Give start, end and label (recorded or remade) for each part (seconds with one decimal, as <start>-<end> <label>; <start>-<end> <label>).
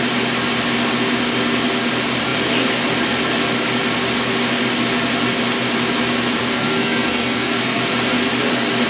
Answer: 0.0-6.4 recorded; 6.4-7.8 remade; 7.8-8.9 recorded